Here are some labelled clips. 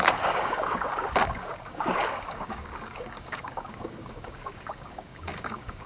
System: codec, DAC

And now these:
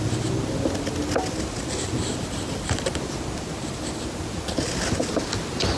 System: none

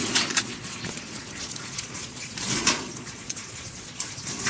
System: vocoder, Vocos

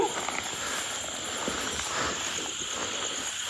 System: none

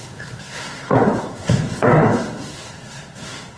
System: codec, SNAC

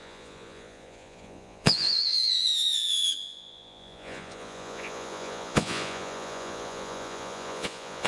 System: vocoder, Vocos